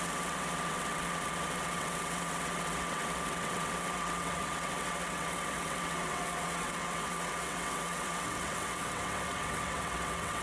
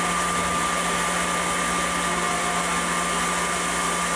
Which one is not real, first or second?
first